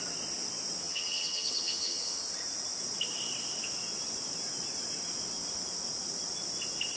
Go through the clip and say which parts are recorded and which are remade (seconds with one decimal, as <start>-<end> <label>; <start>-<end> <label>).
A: 0.0-0.8 recorded; 0.8-2.2 remade; 2.2-7.0 recorded